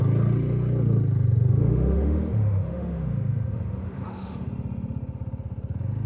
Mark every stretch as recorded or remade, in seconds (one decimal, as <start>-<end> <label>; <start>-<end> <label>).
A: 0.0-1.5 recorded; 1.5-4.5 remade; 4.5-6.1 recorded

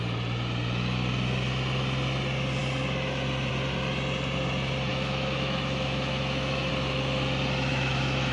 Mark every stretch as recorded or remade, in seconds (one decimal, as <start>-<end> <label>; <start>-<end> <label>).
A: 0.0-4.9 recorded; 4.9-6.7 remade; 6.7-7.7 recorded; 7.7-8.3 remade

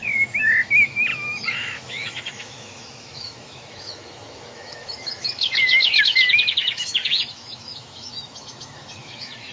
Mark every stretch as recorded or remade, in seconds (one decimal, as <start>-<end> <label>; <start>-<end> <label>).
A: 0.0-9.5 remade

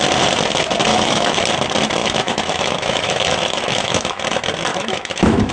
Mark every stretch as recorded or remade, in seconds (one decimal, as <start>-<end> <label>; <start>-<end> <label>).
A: 0.0-0.9 recorded; 0.9-1.4 remade; 1.4-2.0 recorded; 2.0-4.2 remade; 4.2-4.7 recorded; 4.7-5.5 remade

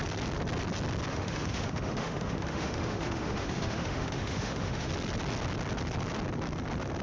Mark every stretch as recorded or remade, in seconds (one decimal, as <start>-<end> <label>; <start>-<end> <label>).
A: 0.0-1.1 recorded; 1.1-4.9 remade; 4.9-7.0 recorded